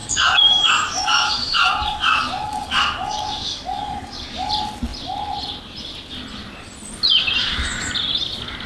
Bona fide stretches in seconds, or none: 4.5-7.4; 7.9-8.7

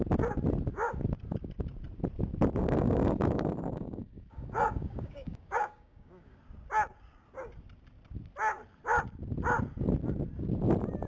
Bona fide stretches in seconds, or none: 0.0-2.6; 6.4-11.1

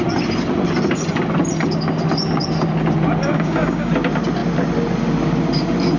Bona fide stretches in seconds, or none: 0.0-3.2; 3.9-6.0